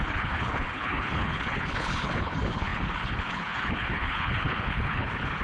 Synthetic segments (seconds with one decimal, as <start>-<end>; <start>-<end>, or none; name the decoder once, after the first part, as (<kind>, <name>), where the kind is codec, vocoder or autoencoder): 0.0-5.4 (codec, HILCodec)